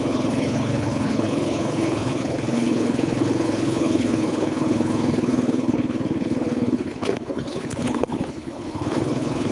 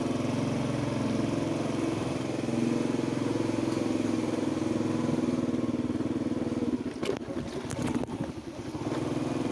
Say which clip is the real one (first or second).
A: second